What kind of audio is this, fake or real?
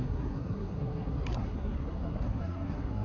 fake